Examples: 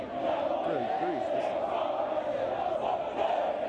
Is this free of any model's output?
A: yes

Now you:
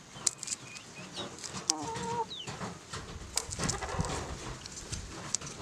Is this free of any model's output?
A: yes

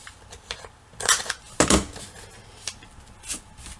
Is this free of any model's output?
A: yes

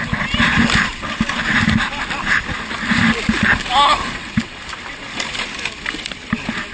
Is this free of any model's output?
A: yes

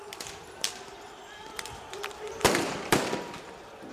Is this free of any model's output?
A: no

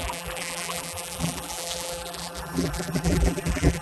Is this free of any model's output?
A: no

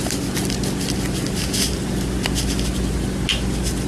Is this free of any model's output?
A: yes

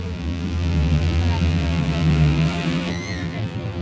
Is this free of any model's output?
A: no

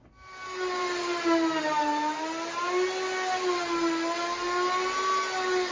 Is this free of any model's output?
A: yes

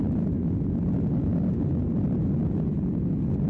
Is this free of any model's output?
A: yes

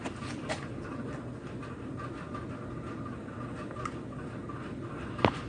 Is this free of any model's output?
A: no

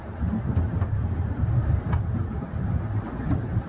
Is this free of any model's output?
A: no